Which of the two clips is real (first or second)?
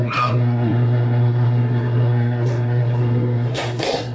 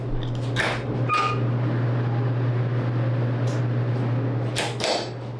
second